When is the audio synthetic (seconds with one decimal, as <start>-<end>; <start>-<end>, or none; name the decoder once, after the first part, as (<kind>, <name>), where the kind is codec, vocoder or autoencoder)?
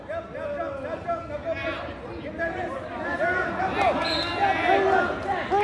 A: none